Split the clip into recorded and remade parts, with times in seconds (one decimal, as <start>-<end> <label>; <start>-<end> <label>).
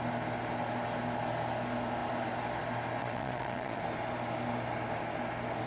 0.0-3.0 recorded; 3.0-3.8 remade; 3.8-5.7 recorded